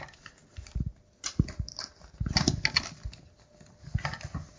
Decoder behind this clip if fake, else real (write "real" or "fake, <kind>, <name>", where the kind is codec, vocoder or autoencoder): real